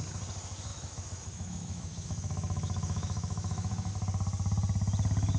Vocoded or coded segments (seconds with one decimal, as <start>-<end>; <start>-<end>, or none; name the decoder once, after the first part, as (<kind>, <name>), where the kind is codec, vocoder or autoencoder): 0.7-3.9 (autoencoder, DAC-VAE)